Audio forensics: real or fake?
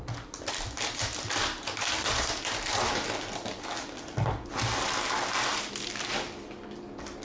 real